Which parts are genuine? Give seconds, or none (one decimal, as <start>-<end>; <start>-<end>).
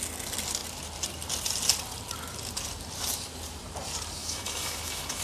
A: 0.0-4.2